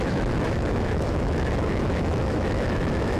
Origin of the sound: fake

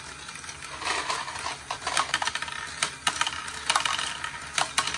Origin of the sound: real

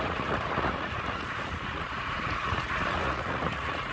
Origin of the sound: fake